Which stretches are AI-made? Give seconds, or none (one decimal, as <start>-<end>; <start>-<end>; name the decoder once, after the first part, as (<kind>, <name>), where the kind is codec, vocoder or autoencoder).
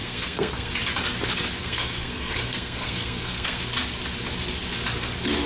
0.0-0.7 (codec, SNAC); 1.6-3.6